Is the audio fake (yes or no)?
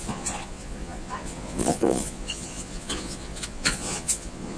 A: yes